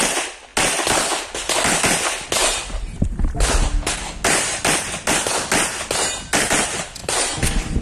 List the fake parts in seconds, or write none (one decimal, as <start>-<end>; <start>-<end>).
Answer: 2.4-3.4; 7.0-7.8